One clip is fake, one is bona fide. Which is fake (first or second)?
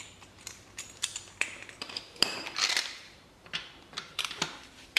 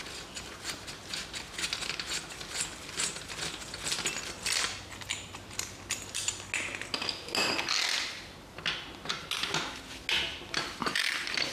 first